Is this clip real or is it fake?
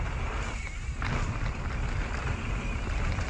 real